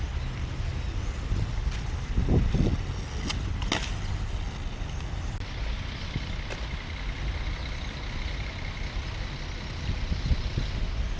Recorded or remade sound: recorded